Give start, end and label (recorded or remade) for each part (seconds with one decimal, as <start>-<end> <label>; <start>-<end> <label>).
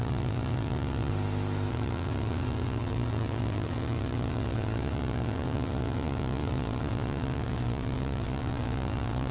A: 0.0-1.1 remade; 1.1-1.7 recorded; 1.7-9.3 remade